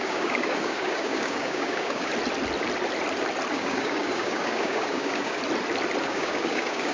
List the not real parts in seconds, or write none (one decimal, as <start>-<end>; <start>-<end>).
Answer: 0.0-2.1; 3.5-5.4; 6.0-6.9